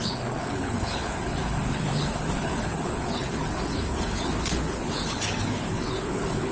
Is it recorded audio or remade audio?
remade